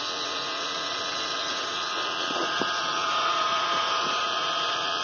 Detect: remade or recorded remade